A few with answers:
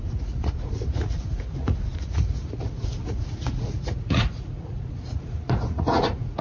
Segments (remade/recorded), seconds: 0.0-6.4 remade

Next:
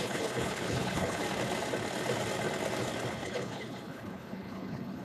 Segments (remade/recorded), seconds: 0.0-1.2 remade; 1.2-3.1 recorded; 3.1-5.0 remade

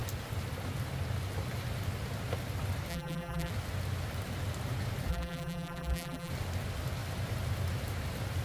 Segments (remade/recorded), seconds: 0.0-2.9 recorded; 2.9-3.5 remade; 3.5-5.1 recorded; 5.1-6.3 remade; 6.3-8.4 recorded